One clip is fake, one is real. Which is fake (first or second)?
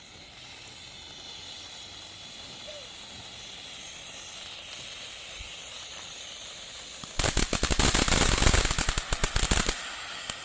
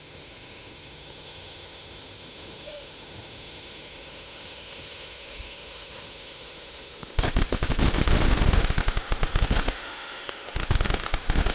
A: second